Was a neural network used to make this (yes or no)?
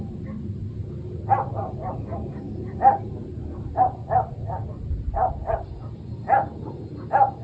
no